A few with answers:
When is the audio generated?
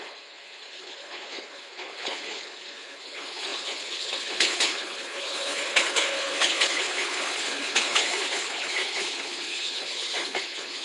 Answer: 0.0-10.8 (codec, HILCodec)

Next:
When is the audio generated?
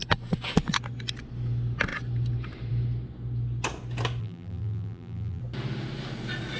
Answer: 4.2-5.4 (vocoder, BigVGAN v2)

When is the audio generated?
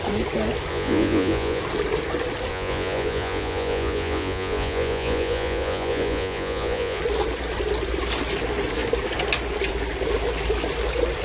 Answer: 0.7-1.6 (vocoder, Vocos); 2.5-7.0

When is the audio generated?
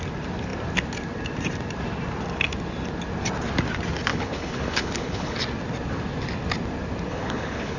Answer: 4.1-5.4 (codec, HILCodec); 7.1-7.8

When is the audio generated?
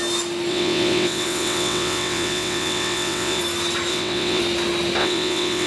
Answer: 0.5-3.4 (vocoder, WaveNeXt); 3.9-4.4; 5.0-5.7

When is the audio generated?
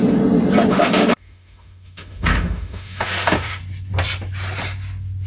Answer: 0.7-3.6 (autoencoder, DAC-VAE)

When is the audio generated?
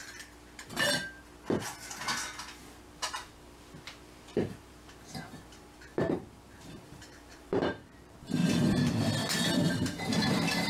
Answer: 2.8-8.4 (vocoder, BigVGAN v2); 9.7-10.7